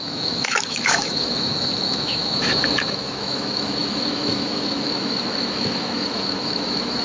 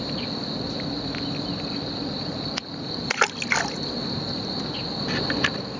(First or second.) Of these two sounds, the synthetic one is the first